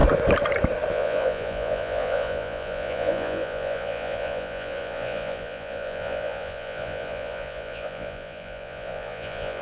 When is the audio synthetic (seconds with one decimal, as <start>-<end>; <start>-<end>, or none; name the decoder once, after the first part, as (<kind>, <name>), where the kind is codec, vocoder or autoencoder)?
0.9-9.6 (vocoder, Vocos)

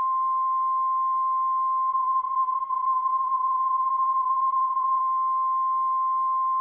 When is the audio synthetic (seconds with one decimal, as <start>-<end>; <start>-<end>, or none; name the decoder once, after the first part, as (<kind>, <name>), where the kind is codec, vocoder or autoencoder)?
1.9-5.0 (vocoder, Vocos)

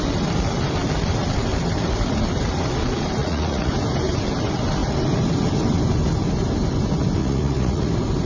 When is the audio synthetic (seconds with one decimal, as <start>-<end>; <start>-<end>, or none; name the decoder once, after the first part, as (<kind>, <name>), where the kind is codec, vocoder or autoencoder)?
3.2-3.7 (vocoder, Vocos); 7.2-7.9

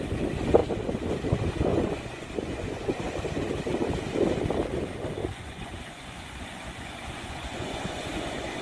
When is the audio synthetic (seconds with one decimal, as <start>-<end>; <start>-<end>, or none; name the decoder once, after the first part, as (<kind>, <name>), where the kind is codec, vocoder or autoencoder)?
1.7-3.0 (vocoder, Vocos); 5.2-8.6

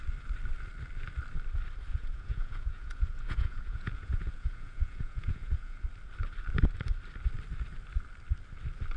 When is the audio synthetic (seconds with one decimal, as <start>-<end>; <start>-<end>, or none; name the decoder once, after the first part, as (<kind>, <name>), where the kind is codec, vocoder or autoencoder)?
1.9-5.8 (vocoder, Vocos)

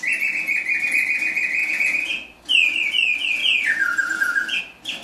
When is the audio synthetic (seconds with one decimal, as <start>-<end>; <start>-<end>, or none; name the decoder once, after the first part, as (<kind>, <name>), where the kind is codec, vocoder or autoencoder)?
1.6-2.1 (vocoder, Vocos); 3.4-4.6